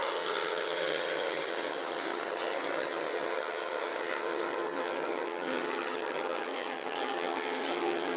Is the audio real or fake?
fake